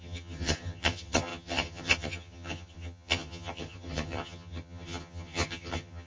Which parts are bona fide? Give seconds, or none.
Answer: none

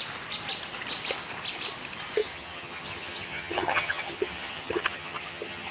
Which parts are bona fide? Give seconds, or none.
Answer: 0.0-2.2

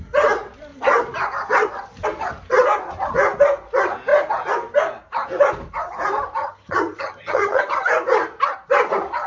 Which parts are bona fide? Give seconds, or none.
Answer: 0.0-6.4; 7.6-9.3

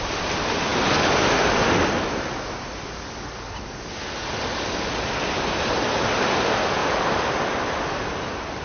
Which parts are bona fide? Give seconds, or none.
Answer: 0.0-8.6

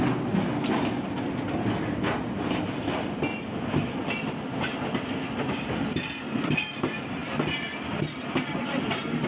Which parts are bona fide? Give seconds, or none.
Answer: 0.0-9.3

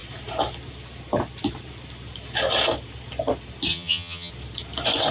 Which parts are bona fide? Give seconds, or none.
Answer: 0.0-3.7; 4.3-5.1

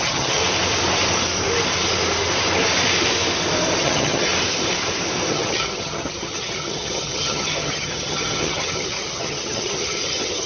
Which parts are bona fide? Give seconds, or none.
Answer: 0.4-3.8; 4.3-5.3

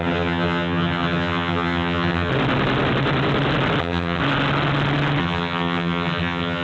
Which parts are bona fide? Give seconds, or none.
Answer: 2.3-3.8; 4.2-5.2